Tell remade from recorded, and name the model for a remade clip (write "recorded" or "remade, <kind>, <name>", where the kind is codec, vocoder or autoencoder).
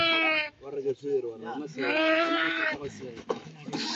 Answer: remade, autoencoder, DAC-VAE